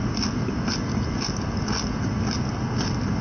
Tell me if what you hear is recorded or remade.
recorded